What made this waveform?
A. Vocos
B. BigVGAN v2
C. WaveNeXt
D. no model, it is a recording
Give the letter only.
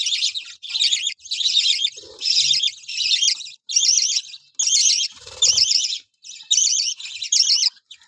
D